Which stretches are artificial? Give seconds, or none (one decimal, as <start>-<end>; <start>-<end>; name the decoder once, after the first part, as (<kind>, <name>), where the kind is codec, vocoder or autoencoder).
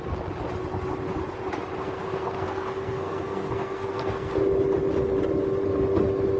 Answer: 1.8-4.3 (codec, SNAC)